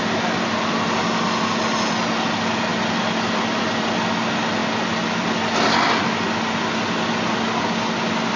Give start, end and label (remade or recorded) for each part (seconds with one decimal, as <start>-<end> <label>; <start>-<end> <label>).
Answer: 0.0-8.4 recorded